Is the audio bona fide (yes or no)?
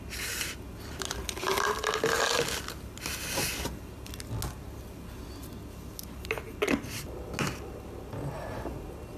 yes